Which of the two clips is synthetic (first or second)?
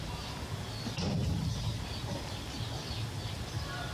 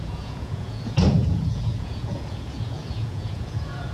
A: second